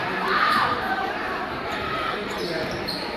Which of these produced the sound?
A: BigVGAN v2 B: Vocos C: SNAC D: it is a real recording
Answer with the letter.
A